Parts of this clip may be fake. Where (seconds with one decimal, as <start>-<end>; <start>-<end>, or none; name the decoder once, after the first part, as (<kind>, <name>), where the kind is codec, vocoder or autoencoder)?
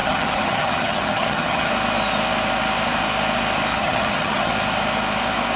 0.0-1.7 (vocoder, HiFi-GAN); 3.7-4.5